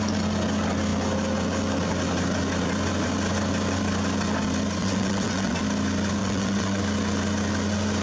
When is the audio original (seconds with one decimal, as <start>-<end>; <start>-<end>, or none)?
0.0-4.8; 5.6-6.2; 6.8-8.0